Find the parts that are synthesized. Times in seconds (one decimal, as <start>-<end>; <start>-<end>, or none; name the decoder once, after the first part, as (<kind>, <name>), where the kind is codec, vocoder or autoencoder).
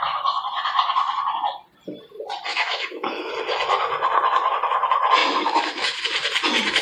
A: 2.5-3.3 (autoencoder, DAC-VAE); 5.2-6.0